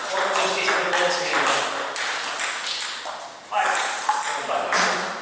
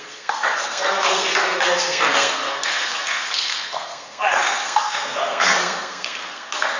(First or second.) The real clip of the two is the first